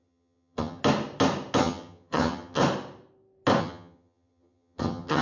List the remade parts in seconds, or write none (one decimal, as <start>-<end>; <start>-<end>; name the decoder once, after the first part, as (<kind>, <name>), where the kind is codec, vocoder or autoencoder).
0.0-0.8 (vocoder, HiFi-GAN); 1.6-2.6; 3.6-5.2